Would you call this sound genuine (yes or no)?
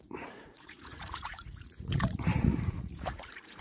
no